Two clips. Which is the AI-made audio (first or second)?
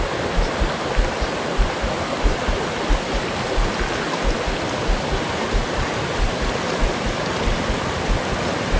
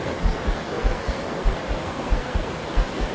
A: second